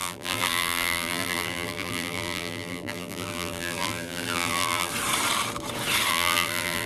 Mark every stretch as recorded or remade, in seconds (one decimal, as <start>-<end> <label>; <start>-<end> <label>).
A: 0.0-4.9 remade; 4.9-6.1 recorded; 6.1-6.9 remade